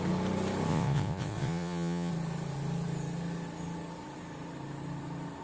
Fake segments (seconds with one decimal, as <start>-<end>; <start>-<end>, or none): 0.7-2.1